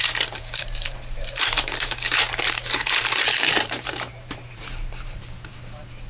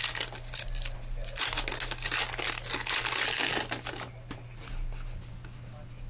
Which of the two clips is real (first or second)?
second